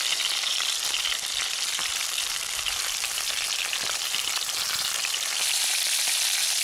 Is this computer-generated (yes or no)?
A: yes